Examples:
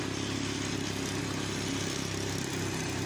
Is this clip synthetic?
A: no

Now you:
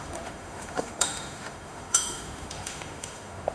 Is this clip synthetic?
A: yes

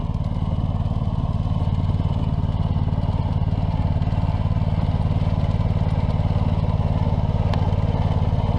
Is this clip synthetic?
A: no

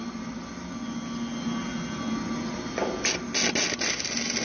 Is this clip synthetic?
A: no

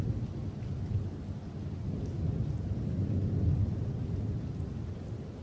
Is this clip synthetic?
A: no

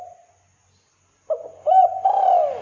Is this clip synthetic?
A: no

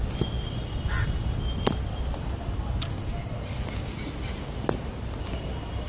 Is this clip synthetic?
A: no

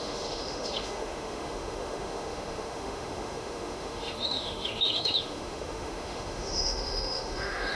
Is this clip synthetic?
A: yes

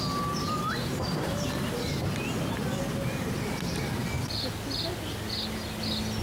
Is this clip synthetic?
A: no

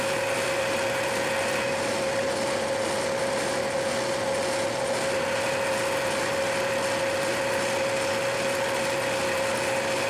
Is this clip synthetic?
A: no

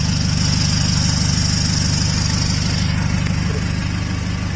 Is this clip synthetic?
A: no